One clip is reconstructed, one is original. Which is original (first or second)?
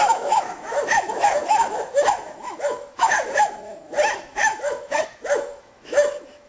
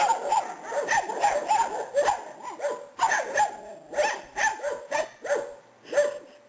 second